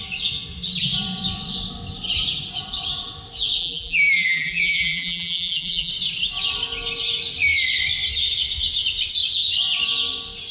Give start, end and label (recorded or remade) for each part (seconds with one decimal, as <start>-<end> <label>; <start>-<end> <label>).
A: 0.0-3.6 recorded; 3.6-5.9 remade; 5.9-10.5 recorded